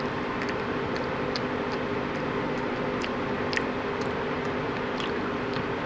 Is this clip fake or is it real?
real